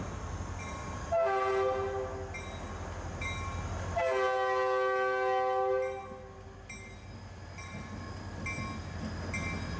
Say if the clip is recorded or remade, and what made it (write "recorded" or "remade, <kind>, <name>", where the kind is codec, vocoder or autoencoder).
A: recorded